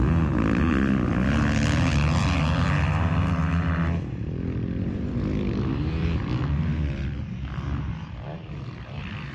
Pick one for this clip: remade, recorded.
recorded